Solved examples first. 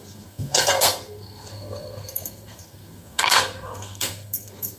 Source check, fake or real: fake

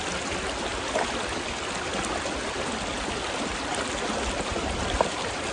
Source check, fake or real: real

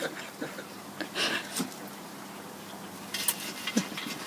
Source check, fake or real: real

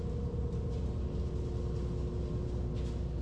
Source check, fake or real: real